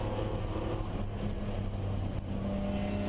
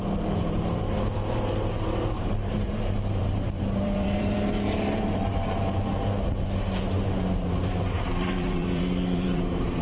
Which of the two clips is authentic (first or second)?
first